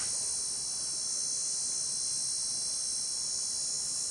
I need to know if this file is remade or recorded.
recorded